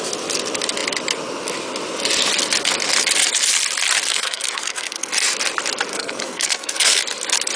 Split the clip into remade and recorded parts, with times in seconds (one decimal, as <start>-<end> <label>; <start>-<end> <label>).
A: 0.0-4.1 recorded; 4.1-5.1 remade; 5.1-5.9 recorded; 5.9-7.0 remade; 7.0-7.6 recorded